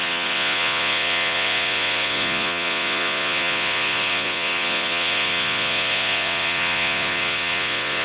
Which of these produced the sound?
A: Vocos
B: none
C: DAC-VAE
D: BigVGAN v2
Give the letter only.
A